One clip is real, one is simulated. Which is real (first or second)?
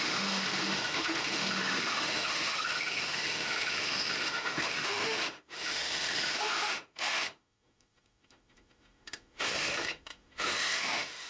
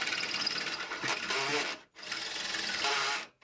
second